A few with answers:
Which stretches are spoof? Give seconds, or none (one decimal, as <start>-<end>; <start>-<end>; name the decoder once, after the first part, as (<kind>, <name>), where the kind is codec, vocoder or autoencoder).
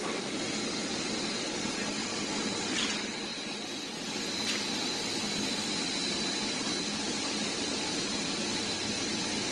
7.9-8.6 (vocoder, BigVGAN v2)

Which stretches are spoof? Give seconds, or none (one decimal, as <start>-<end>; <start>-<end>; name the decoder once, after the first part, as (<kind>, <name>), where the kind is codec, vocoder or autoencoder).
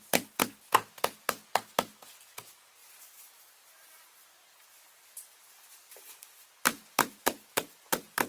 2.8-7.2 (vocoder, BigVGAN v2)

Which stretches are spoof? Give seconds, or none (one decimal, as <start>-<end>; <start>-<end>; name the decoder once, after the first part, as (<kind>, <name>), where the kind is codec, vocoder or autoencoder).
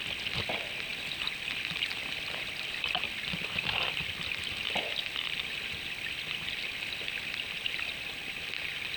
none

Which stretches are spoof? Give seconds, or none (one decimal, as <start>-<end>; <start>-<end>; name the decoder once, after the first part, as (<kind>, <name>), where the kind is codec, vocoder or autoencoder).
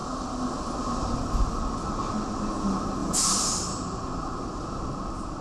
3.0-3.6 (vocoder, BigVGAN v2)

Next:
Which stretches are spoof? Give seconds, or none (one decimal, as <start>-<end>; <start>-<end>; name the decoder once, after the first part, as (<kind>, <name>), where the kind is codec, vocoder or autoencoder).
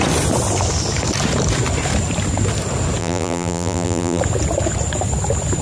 3.0-4.2 (vocoder, BigVGAN v2)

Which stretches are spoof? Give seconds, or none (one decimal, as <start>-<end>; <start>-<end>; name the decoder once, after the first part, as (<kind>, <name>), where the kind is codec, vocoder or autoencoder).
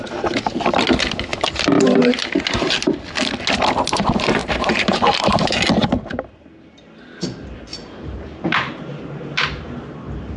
4.4-5.6 (vocoder, BigVGAN v2); 7.7-9.0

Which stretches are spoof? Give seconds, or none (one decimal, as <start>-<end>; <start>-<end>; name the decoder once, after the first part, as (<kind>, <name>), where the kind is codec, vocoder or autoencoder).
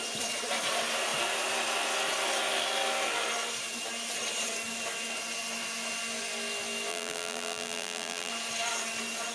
6.9-8.3 (vocoder, BigVGAN v2)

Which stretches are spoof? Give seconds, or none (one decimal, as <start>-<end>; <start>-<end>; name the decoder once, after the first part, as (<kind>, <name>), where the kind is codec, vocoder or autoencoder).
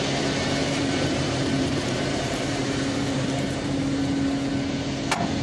0.6-3.8 (vocoder, BigVGAN v2)